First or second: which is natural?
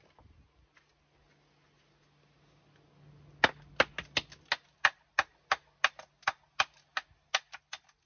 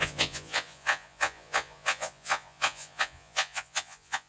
first